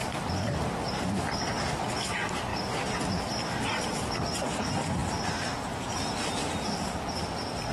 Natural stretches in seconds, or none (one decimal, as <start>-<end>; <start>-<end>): 2.5-4.4